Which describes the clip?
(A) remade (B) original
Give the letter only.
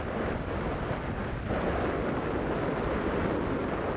B